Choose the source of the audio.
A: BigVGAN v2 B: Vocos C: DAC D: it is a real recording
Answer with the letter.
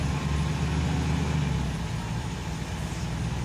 D